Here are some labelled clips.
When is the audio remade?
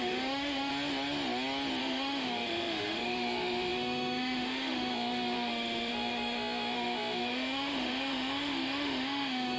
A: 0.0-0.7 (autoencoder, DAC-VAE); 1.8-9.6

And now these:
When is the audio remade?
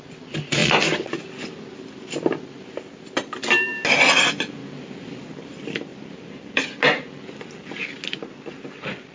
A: 4.6-5.2 (vocoder, BigVGAN v2); 5.9-6.7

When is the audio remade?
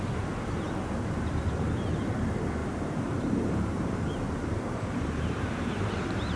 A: 2.6-6.4 (vocoder, BigVGAN v2)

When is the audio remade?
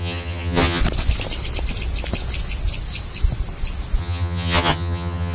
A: 0.0-0.8 (vocoder, HiFi-GAN); 4.0-5.3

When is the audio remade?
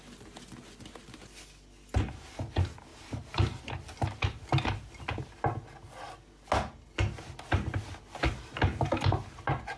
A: 2.9-3.6 (vocoder, BigVGAN v2)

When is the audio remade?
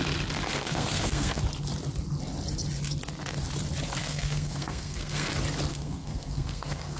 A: 0.5-1.4 (codec, SNAC); 4.0-5.3; 5.7-7.0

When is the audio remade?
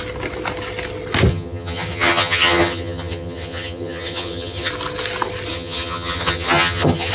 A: 1.3-4.7 (vocoder, HiFi-GAN); 5.5-7.1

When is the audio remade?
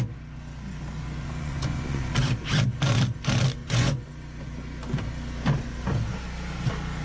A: 1.2-2.1 (vocoder, Vocos); 3.6-4.1